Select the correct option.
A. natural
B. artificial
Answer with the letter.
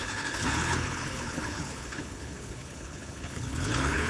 B